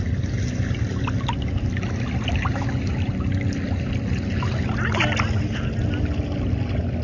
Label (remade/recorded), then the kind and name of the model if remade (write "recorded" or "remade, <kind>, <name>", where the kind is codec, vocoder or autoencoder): recorded